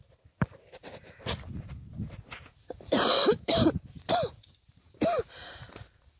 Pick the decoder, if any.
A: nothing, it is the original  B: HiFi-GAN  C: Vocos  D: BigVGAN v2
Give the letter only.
D